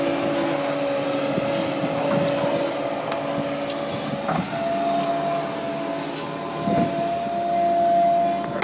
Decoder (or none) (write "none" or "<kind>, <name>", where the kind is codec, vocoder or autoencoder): none